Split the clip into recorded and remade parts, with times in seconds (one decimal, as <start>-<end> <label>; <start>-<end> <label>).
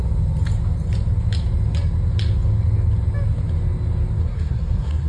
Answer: 0.0-4.2 recorded; 4.2-5.1 remade